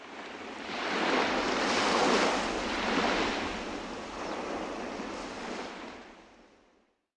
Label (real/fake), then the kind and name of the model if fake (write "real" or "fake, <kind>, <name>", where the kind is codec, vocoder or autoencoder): real